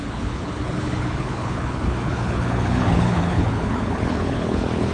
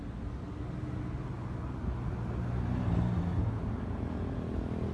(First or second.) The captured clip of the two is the second